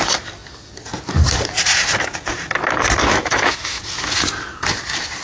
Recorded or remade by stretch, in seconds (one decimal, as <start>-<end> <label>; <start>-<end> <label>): 0.0-3.0 recorded; 3.0-3.8 remade; 3.8-5.2 recorded